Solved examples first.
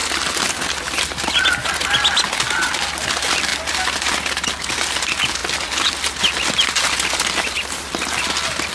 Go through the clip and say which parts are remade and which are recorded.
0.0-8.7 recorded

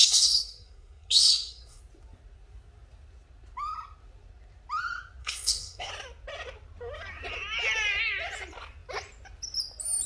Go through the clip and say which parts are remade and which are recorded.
0.0-1.8 remade; 1.8-5.2 recorded; 5.2-5.9 remade; 5.9-10.1 recorded